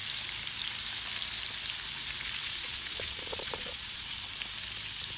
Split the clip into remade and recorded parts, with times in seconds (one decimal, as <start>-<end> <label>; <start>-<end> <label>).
0.0-2.4 recorded; 2.4-4.2 remade; 4.2-5.2 recorded